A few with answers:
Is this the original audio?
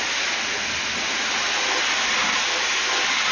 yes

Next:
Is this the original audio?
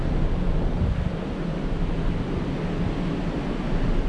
yes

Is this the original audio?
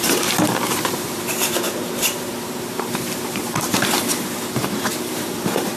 no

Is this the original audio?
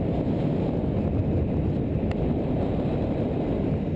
yes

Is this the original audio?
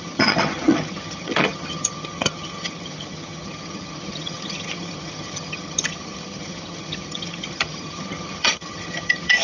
no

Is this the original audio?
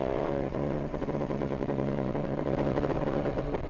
no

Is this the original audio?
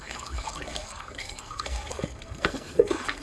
no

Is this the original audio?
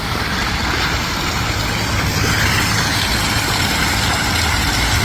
yes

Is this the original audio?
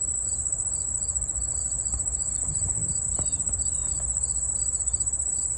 yes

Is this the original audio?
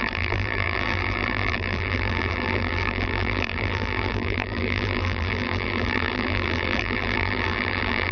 no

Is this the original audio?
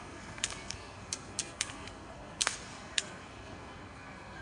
no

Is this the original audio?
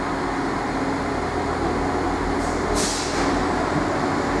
yes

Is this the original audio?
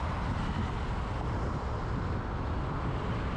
yes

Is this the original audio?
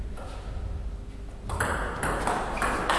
yes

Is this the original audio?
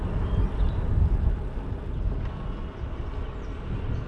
yes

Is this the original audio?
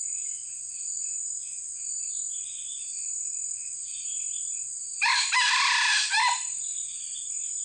yes